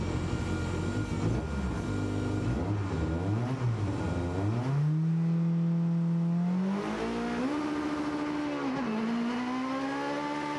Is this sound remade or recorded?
recorded